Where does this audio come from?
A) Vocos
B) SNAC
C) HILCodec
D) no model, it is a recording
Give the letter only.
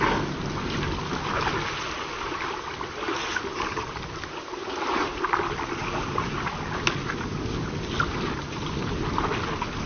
D